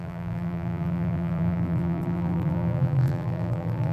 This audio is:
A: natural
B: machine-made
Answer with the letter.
B